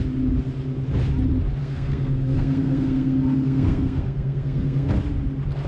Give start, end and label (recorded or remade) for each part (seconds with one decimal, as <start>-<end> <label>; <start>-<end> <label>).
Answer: 0.0-1.6 recorded; 1.6-4.9 remade; 4.9-5.7 recorded